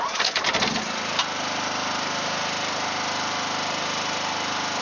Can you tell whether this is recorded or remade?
recorded